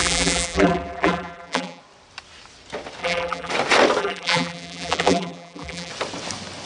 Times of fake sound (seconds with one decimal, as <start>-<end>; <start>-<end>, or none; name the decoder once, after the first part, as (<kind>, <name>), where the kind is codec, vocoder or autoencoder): 0.0-1.8 (vocoder, BigVGAN v2); 3.0-3.5; 4.0-5.9